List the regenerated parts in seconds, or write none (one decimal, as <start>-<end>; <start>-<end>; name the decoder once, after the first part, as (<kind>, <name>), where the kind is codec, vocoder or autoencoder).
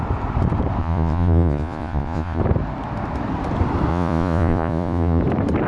0.8-2.4 (vocoder, Vocos); 3.9-5.2